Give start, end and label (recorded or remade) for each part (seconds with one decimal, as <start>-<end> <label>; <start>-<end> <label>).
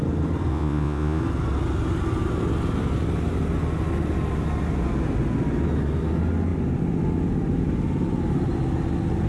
0.0-0.5 recorded; 0.5-1.2 remade; 1.2-9.3 recorded